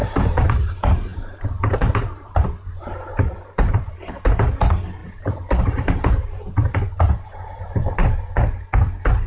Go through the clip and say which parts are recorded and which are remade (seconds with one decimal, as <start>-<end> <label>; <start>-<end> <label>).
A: 0.0-0.5 remade; 0.5-1.1 recorded; 1.1-4.3 remade; 4.3-5.0 recorded; 5.0-8.3 remade; 8.3-9.3 recorded